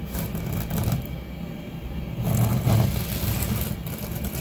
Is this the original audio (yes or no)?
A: yes